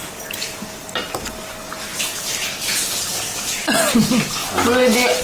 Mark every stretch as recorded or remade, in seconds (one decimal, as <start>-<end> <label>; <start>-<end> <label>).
0.0-5.2 recorded